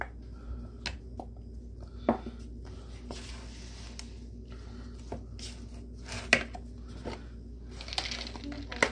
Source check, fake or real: real